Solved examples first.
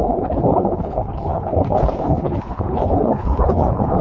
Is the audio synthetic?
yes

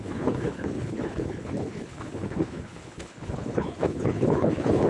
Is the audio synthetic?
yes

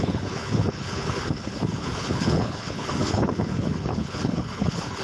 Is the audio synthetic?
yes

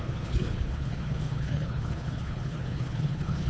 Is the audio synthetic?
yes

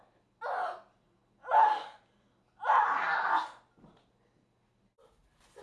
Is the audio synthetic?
no